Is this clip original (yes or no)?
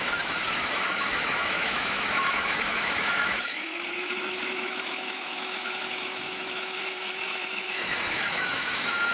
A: no